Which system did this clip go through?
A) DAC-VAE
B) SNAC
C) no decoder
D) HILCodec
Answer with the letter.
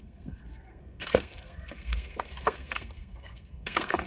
B